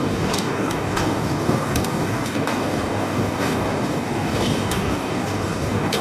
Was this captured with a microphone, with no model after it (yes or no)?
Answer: no